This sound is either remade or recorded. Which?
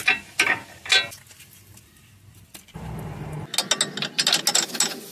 recorded